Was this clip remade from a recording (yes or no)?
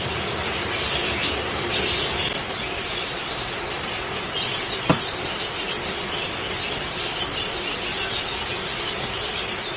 no